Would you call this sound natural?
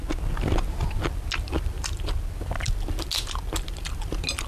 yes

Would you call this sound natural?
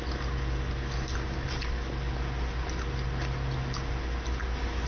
yes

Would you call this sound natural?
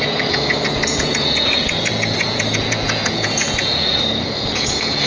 no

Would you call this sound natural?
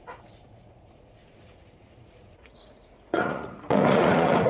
no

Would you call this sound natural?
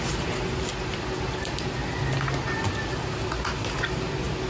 yes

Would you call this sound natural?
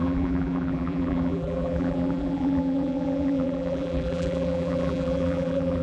no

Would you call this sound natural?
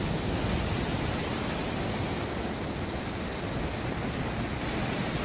yes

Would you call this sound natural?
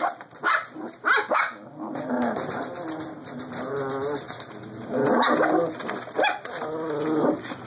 yes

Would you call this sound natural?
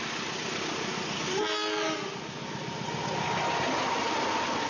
yes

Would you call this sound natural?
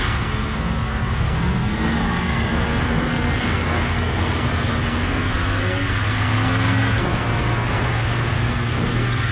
no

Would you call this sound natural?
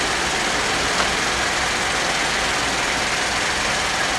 yes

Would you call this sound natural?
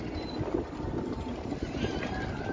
yes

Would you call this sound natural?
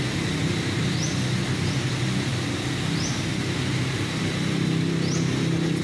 yes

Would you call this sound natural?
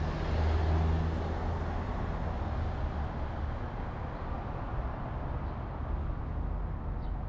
yes